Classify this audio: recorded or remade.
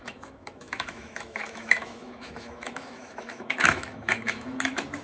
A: remade